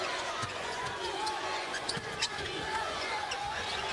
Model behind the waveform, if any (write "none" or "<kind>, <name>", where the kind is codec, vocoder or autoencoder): vocoder, Vocos